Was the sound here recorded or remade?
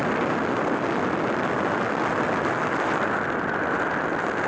recorded